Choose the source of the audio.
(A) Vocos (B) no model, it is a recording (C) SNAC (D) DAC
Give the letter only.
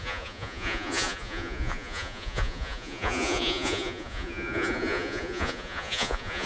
A